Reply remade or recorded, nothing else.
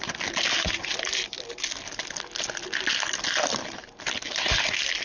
recorded